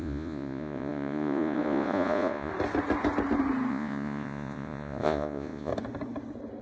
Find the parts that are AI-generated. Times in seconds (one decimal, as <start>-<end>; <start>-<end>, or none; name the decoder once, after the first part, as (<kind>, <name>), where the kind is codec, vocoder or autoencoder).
0.0-2.5 (vocoder, Vocos); 3.7-5.7

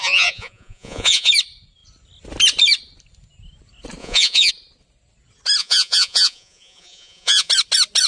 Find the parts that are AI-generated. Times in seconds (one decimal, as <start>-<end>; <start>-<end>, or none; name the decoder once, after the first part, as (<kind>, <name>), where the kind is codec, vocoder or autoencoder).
0.0-1.3 (vocoder, Vocos); 4.0-4.5; 5.6-7.5

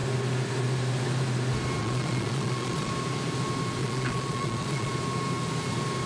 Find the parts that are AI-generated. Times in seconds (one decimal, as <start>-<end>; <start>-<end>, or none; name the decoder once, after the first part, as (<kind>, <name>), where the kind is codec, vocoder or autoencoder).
1.8-2.9 (vocoder, Vocos); 3.8-4.9

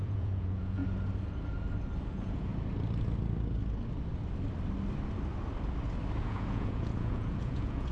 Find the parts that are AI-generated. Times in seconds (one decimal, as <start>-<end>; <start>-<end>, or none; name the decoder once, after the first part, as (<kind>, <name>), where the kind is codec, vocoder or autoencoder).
0.0-0.8 (vocoder, Vocos); 2.1-2.5; 6.2-7.9

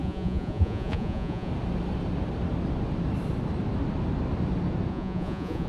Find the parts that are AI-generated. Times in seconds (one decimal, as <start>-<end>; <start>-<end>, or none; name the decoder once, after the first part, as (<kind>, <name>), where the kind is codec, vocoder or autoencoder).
0.0-1.5 (vocoder, Vocos); 4.9-5.7

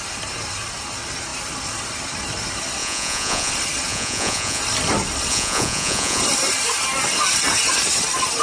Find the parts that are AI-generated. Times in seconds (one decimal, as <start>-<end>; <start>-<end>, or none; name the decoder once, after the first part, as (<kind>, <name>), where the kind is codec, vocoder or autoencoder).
2.8-3.5 (vocoder, Vocos); 3.9-4.6; 5.3-6.2

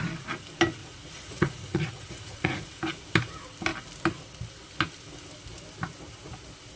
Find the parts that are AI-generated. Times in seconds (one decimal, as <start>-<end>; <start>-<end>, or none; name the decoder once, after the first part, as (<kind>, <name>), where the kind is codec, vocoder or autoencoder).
0.8-2.8 (vocoder, Vocos)